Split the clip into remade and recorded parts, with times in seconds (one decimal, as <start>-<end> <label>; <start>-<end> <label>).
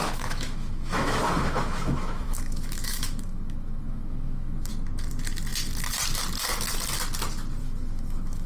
0.0-4.7 remade; 4.7-7.6 recorded; 7.6-8.5 remade